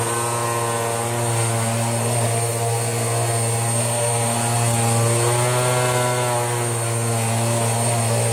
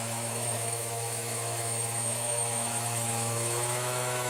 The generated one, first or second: second